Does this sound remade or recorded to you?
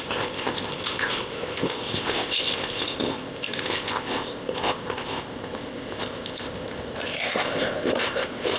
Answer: remade